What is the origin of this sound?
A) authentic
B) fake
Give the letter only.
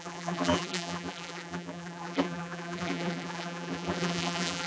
B